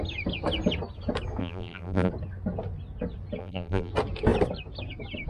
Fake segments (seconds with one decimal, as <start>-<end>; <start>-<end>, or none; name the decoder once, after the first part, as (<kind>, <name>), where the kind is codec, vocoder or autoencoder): 1.4-2.1 (vocoder, BigVGAN v2); 3.4-3.9